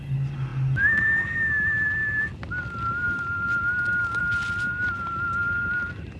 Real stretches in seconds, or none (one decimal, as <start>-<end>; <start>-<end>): 0.0-6.2